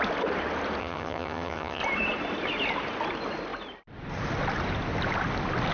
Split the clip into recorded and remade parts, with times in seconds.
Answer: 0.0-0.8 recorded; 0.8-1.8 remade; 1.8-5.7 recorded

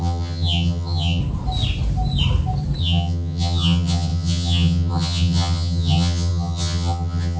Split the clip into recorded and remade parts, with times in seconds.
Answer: 0.0-1.2 remade; 1.2-2.8 recorded; 2.8-7.4 remade